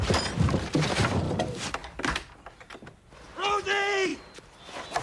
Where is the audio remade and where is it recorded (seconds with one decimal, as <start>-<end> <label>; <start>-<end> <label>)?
0.0-1.8 recorded; 1.8-3.0 remade; 3.0-4.1 recorded; 4.1-5.0 remade